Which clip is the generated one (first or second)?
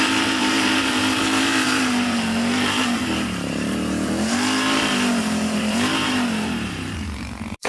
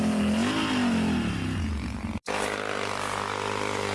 first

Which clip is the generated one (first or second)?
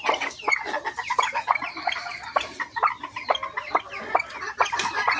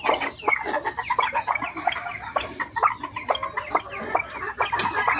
first